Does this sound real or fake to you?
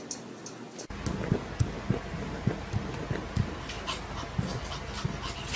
real